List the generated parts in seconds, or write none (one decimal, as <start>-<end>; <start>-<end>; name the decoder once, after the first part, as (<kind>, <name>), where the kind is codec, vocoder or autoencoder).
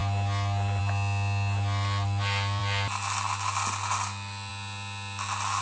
none